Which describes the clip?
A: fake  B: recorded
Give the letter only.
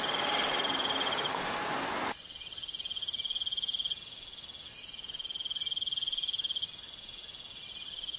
B